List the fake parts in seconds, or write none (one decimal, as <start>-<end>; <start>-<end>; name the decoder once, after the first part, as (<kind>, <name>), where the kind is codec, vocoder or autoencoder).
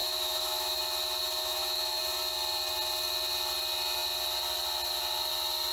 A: 0.0-0.8 (autoencoder, DAC-VAE); 1.4-2.0